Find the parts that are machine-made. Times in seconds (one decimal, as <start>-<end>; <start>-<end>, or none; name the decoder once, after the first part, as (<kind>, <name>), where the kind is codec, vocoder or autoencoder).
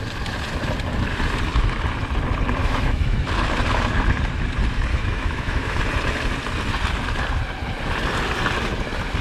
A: 2.6-3.2 (autoencoder, DAC-VAE); 4.9-5.8